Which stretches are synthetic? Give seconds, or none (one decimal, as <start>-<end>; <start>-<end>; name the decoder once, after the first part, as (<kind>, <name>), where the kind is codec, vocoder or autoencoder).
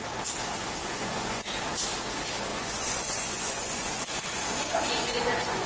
0.8-1.4 (vocoder, Vocos); 2.5-5.7